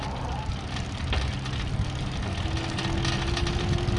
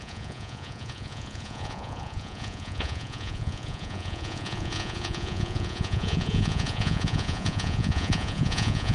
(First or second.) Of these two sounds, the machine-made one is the second